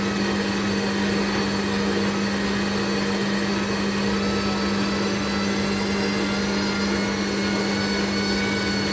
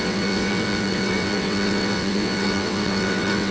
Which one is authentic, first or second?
first